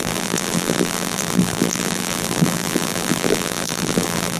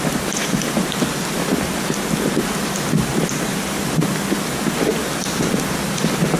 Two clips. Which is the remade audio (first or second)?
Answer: first